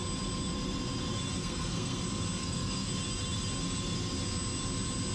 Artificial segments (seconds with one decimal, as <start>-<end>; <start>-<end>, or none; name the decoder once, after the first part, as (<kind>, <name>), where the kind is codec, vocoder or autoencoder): 1.4-2.0 (codec, SNAC); 2.4-2.9